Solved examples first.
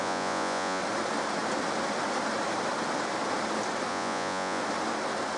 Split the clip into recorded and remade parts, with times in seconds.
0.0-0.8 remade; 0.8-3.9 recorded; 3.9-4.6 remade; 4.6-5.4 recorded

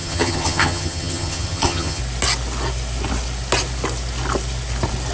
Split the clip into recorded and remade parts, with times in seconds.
0.0-2.0 remade; 2.0-5.1 recorded

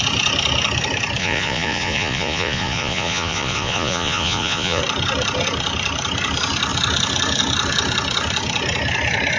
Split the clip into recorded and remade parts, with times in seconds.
0.0-1.2 recorded; 1.2-4.8 remade; 4.8-9.4 recorded

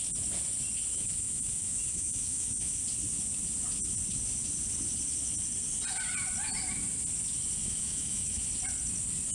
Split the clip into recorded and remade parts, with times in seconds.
0.0-0.9 recorded; 0.9-2.8 remade; 2.8-7.6 recorded; 7.6-8.5 remade; 8.5-9.3 recorded